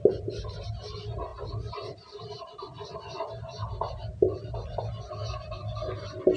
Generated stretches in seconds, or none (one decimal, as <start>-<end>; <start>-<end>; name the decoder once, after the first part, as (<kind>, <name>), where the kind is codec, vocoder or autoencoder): none